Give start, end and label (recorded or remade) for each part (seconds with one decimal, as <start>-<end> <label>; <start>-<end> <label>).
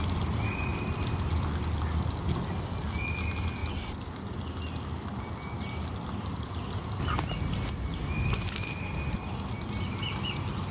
0.0-10.7 recorded